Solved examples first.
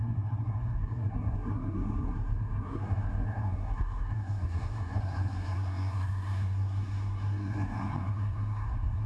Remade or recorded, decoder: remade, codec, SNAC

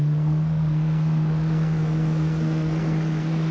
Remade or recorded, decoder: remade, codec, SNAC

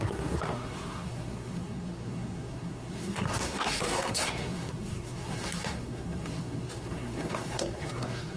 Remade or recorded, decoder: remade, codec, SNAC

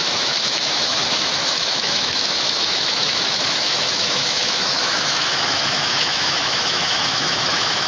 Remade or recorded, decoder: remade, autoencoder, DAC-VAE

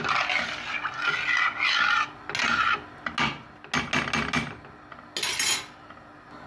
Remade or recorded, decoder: recorded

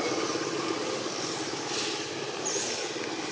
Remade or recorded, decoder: recorded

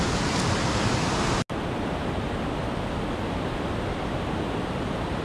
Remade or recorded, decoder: recorded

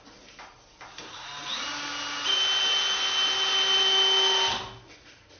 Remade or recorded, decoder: recorded